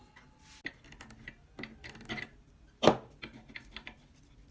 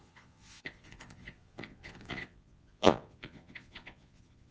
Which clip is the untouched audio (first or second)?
first